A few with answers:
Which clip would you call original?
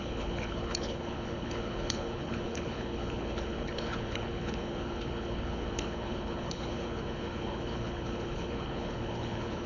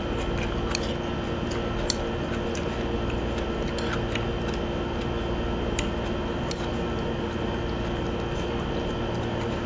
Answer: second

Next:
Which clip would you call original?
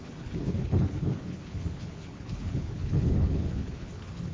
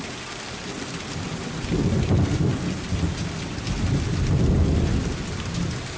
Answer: second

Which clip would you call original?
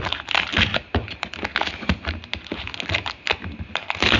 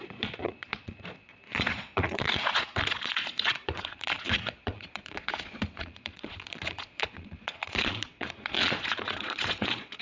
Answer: first